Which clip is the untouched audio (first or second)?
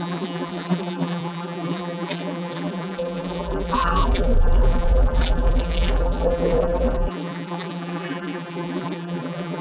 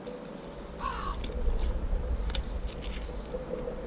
second